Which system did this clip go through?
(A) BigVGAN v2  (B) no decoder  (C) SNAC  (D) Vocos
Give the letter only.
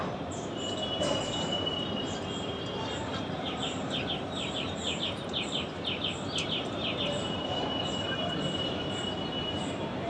A